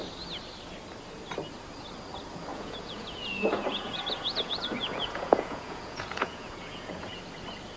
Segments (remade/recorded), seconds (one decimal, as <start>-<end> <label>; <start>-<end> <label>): 0.0-2.5 recorded; 2.5-7.2 remade; 7.2-7.8 recorded